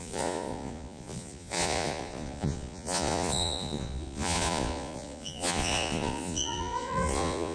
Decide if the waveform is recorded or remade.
remade